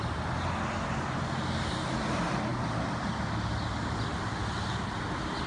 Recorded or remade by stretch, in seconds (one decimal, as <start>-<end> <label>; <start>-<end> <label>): 0.0-5.5 recorded